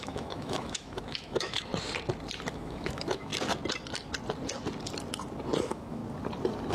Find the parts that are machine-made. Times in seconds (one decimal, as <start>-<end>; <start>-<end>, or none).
0.0-1.7; 2.5-3.3; 5.6-6.0